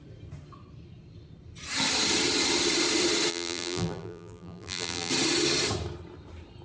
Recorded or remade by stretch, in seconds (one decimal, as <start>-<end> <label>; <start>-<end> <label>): 0.0-3.3 recorded; 3.3-5.1 remade; 5.1-6.6 recorded